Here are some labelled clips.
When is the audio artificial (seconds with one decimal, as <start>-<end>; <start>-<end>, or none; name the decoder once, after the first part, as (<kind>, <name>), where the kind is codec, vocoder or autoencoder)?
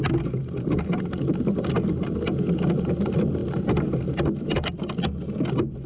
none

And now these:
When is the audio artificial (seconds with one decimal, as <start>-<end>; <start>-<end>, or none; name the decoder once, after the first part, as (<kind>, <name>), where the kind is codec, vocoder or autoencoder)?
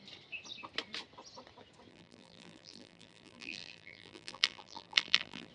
1.9-5.5 (vocoder, BigVGAN v2)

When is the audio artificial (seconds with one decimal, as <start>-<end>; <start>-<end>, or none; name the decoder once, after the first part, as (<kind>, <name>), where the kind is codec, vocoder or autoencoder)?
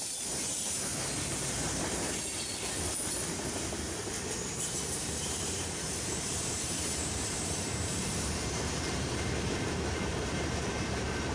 0.0-0.9 (vocoder, BigVGAN v2); 4.7-11.3